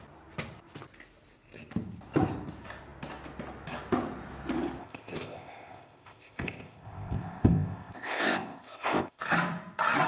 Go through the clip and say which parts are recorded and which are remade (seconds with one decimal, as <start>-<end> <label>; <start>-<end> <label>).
0.0-4.8 recorded; 4.8-9.2 remade; 9.2-10.1 recorded